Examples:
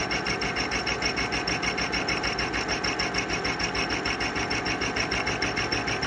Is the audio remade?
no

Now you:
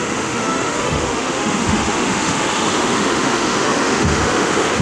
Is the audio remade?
yes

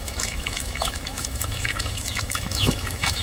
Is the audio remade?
yes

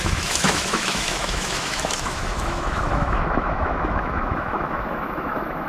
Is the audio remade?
yes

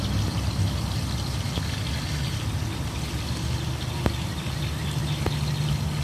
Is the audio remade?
no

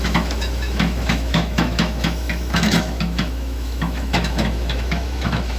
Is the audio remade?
yes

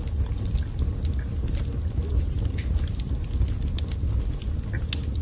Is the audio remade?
no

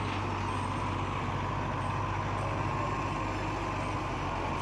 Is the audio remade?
no